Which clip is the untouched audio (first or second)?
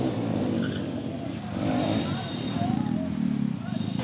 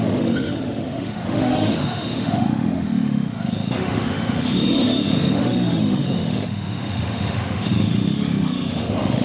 first